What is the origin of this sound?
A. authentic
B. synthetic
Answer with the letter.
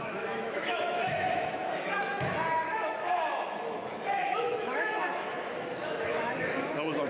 B